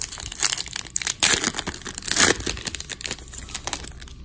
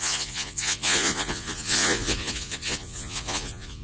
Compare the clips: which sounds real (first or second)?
first